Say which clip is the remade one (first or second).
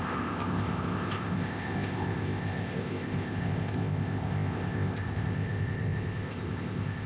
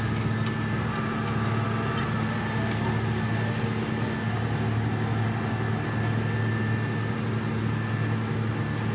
first